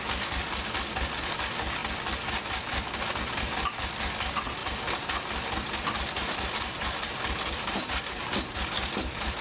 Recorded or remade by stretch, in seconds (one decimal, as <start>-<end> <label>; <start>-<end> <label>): 0.0-9.4 recorded